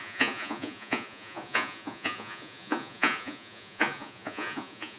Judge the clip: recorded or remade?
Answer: remade